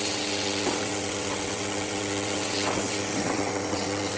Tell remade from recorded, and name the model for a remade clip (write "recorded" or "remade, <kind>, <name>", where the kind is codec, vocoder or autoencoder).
remade, vocoder, WaveNeXt